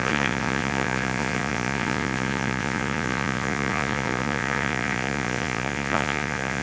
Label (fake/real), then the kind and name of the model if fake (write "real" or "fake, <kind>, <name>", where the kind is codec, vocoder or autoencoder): fake, vocoder, Vocos